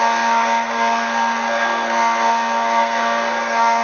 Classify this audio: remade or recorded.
remade